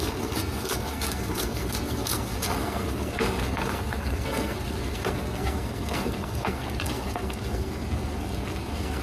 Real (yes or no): no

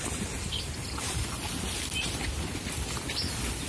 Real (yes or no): yes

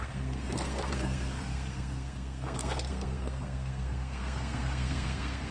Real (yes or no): no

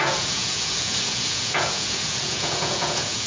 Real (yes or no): no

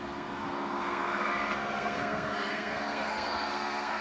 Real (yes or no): no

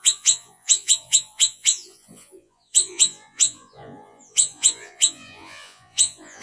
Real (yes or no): no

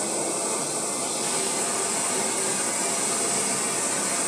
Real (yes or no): yes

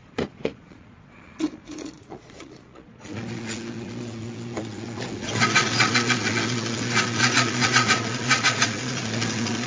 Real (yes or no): no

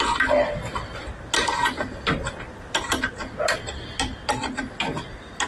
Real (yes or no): yes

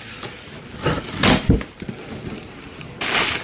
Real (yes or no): yes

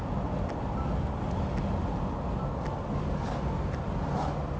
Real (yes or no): yes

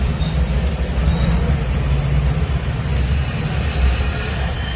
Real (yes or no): yes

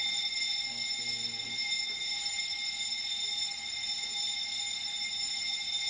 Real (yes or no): yes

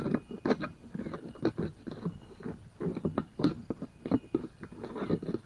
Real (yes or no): yes